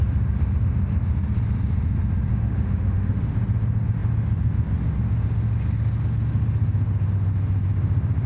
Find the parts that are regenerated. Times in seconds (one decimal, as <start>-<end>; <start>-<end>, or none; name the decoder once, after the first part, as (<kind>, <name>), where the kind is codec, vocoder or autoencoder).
2.3-3.3 (autoencoder, DAC-VAE)